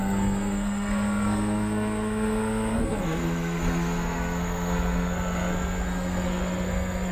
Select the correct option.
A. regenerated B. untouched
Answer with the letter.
A